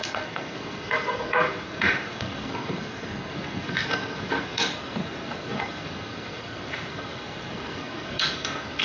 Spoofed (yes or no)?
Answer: yes